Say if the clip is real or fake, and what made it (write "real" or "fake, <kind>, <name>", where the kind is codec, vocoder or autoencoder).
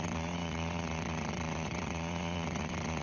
fake, vocoder, WaveNeXt